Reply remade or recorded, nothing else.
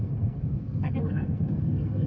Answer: remade